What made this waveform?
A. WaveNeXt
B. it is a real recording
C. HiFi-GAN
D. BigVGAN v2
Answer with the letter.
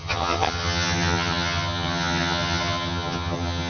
C